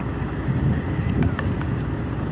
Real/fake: real